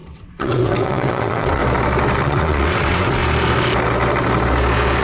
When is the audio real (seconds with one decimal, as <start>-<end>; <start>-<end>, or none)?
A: 1.6-2.2; 3.2-5.0